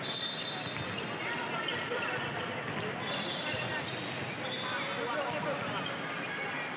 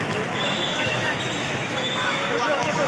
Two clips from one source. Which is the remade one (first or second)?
second